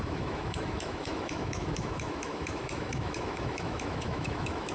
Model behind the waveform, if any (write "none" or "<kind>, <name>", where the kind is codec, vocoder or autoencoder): autoencoder, DAC-VAE